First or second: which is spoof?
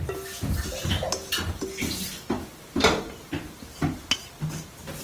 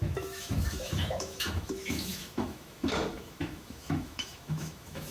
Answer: second